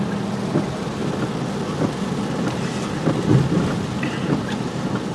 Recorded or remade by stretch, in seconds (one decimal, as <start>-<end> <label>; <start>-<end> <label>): 0.0-5.1 recorded